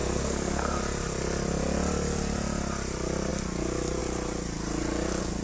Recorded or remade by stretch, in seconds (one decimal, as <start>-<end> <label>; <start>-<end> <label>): 0.0-0.8 remade; 0.8-5.4 recorded